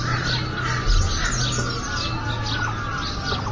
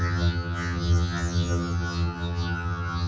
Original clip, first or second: first